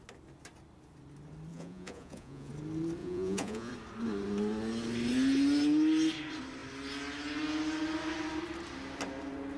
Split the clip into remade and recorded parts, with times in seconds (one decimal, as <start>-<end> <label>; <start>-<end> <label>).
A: 0.0-1.5 recorded; 1.5-2.5 remade; 2.5-3.0 recorded; 3.0-3.7 remade; 3.7-9.6 recorded